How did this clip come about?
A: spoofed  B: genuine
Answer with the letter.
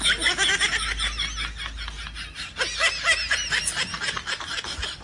B